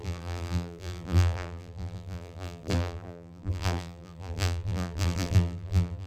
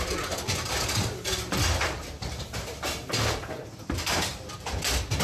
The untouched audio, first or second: second